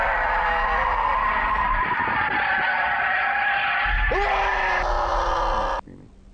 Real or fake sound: real